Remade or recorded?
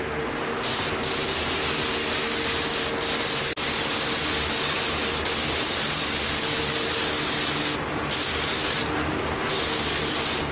recorded